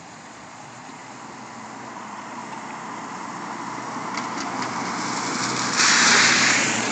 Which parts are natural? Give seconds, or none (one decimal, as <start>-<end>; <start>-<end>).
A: 1.0-1.9; 2.4-6.5